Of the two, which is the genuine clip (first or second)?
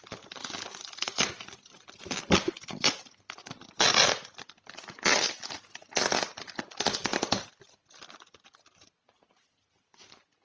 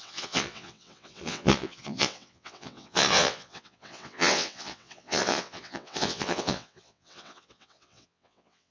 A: first